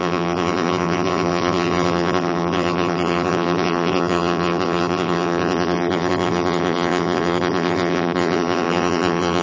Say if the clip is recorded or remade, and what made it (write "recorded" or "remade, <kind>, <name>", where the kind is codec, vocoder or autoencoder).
remade, vocoder, BigVGAN v2